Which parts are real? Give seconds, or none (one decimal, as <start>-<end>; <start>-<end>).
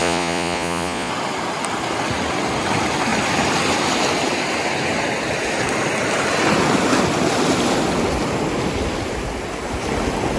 1.1-10.4